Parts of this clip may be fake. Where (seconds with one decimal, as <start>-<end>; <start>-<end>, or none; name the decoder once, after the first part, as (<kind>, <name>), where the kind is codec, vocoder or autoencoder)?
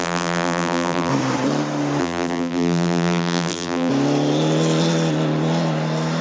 0.0-1.1 (vocoder, BigVGAN v2); 2.0-3.9